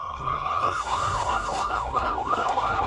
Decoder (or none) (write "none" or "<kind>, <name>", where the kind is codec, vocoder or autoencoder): codec, SNAC